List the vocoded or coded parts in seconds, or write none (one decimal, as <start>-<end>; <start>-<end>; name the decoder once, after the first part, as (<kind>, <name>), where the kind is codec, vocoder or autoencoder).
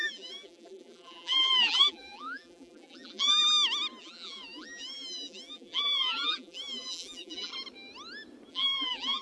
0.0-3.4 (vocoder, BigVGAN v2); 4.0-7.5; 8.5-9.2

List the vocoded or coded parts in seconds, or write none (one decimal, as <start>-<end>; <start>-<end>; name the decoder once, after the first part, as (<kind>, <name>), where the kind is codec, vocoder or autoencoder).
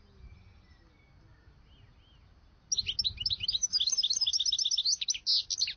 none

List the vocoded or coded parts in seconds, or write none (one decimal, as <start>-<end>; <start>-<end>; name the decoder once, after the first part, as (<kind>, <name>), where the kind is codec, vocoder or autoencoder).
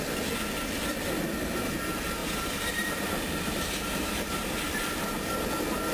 2.2-5.0 (vocoder, BigVGAN v2)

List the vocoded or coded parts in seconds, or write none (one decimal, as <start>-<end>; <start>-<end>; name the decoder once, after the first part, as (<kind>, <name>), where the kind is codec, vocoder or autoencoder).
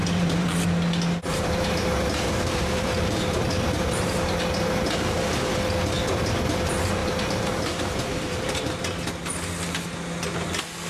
0.0-0.6 (vocoder, BigVGAN v2); 1.3-4.4; 7.0-8.7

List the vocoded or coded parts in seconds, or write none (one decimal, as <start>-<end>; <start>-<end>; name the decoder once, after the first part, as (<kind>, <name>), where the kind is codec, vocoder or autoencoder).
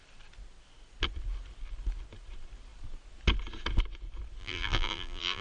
4.4-5.4 (vocoder, BigVGAN v2)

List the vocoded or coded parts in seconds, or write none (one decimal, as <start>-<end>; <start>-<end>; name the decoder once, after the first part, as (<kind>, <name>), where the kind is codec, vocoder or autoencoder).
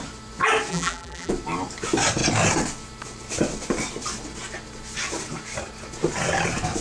0.7-1.3 (vocoder, BigVGAN v2)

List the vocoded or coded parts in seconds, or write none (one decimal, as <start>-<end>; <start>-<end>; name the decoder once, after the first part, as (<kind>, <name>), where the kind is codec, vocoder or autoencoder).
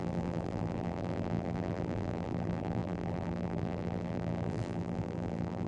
0.0-5.7 (vocoder, BigVGAN v2)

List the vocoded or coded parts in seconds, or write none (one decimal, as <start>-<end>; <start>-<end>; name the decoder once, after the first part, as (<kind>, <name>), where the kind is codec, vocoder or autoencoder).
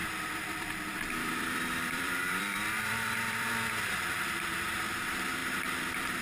0.0-3.5 (vocoder, BigVGAN v2)